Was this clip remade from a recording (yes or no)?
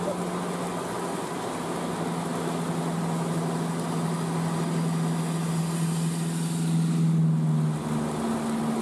no